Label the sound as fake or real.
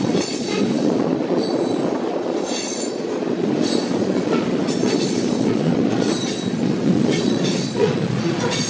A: fake